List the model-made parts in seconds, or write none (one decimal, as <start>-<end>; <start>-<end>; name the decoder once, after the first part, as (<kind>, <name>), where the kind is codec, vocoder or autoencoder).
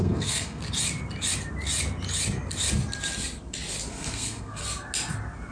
0.0-0.6 (codec, SNAC); 3.9-4.6